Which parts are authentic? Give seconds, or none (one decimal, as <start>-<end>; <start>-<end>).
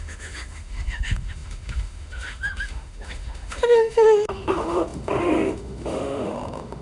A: none